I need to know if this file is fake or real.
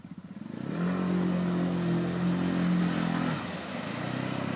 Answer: real